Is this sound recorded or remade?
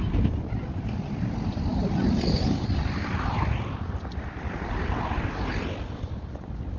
recorded